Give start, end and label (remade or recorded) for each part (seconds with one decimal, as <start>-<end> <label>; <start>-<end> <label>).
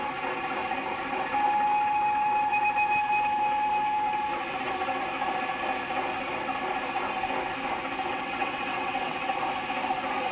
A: 0.0-8.1 recorded; 8.1-9.4 remade; 9.4-10.3 recorded